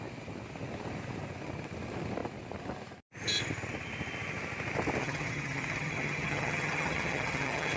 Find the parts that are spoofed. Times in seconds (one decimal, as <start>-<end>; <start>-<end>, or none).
5.0-7.8